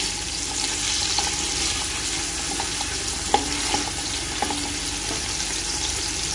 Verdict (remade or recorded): recorded